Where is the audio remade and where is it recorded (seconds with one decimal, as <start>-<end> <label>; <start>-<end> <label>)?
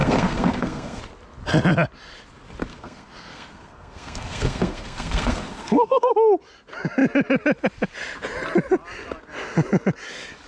0.0-1.0 remade; 1.0-2.7 recorded; 2.7-6.1 remade; 6.1-10.5 recorded